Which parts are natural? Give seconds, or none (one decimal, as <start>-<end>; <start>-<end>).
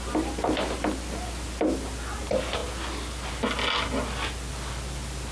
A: 0.0-5.3